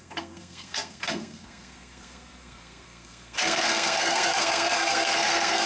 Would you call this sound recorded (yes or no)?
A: no